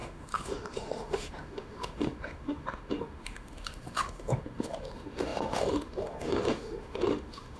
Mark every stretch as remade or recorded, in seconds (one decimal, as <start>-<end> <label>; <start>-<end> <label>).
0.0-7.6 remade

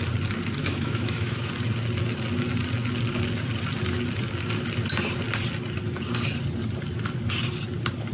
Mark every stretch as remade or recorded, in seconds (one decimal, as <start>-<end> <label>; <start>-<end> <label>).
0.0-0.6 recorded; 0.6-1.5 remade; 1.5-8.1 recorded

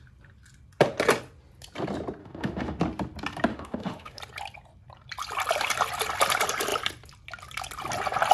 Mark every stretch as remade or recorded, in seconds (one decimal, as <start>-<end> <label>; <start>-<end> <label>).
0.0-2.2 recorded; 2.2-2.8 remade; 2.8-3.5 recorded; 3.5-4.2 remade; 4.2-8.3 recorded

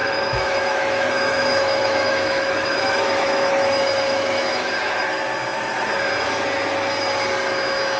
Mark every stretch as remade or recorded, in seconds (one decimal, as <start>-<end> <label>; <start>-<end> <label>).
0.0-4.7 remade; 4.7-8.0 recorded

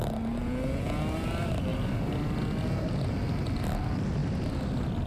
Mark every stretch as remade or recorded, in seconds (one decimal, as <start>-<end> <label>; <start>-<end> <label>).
0.0-5.1 recorded